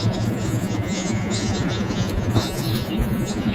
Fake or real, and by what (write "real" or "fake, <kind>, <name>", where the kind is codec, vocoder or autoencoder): fake, vocoder, Vocos